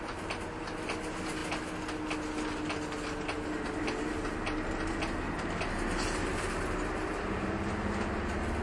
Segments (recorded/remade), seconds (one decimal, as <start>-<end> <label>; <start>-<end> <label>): 0.0-8.6 recorded